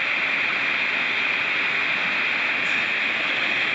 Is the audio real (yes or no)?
yes